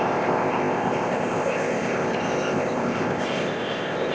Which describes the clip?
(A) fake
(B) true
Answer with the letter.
A